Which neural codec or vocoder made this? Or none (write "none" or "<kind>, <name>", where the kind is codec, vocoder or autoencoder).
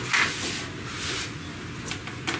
none